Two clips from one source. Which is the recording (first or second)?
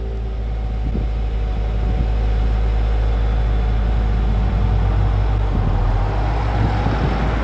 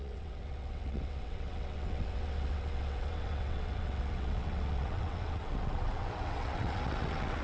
first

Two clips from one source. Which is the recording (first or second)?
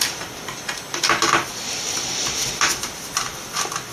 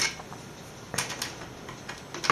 second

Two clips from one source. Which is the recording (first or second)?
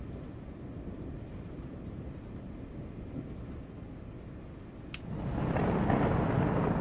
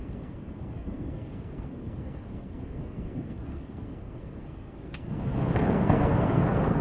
first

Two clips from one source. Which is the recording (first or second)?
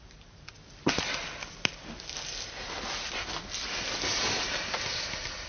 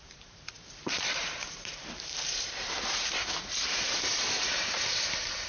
first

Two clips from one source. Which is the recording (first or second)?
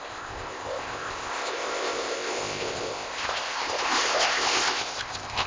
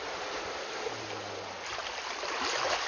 second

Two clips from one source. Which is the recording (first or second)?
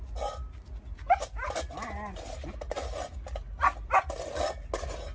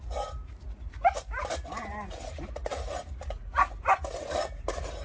first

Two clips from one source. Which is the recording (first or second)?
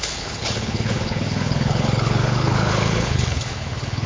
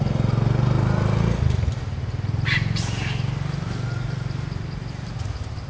second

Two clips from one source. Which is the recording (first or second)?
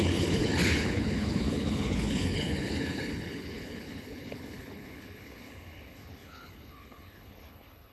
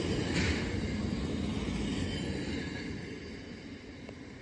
second